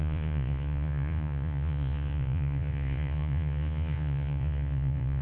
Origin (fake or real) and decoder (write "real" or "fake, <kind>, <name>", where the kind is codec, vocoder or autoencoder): fake, vocoder, Vocos